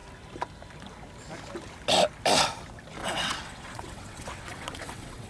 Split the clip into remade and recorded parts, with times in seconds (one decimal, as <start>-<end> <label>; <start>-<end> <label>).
0.0-3.0 recorded; 3.0-5.3 remade